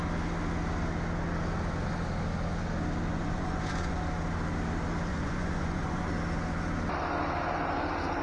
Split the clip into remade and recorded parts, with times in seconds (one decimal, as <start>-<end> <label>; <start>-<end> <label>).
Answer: 0.0-3.1 recorded; 3.1-4.0 remade; 4.0-5.1 recorded; 5.1-6.1 remade; 6.1-8.2 recorded